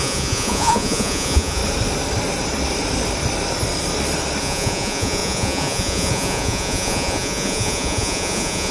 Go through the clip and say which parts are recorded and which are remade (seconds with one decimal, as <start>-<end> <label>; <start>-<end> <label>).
0.0-1.6 remade; 1.6-4.4 recorded; 4.4-8.7 remade